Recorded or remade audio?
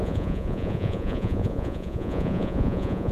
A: remade